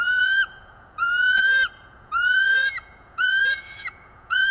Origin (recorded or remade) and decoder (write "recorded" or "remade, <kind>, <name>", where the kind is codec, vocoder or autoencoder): remade, vocoder, Vocos